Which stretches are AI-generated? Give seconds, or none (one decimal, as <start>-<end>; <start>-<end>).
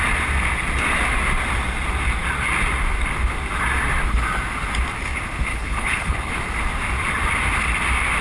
5.5-6.3